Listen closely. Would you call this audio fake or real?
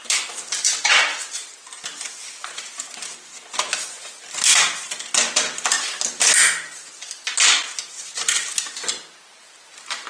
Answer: real